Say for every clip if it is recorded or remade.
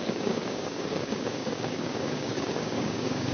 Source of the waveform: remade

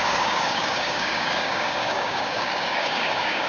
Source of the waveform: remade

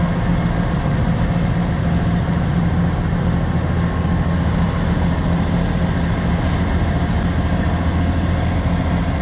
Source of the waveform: recorded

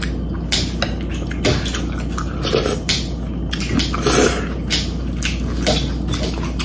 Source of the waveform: recorded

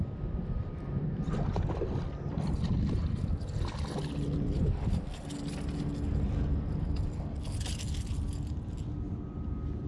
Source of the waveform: recorded